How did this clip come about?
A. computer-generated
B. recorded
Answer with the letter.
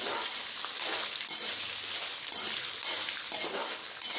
B